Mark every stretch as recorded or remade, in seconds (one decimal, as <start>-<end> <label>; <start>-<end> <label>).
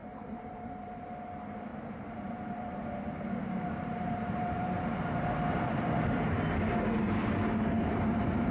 0.0-1.0 remade; 1.0-1.7 recorded; 1.7-5.3 remade; 5.3-7.7 recorded; 7.7-8.5 remade